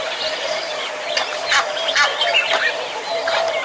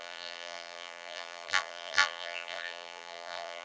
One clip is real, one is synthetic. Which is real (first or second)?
first